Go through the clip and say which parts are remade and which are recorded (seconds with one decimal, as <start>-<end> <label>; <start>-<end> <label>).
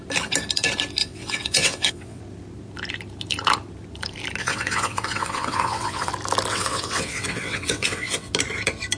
0.0-1.0 recorded; 1.0-2.2 remade; 2.2-4.4 recorded; 4.4-6.1 remade; 6.1-6.5 recorded; 6.5-8.3 remade; 8.3-9.0 recorded